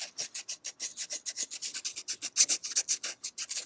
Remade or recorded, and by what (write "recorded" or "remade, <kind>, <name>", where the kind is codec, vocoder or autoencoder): recorded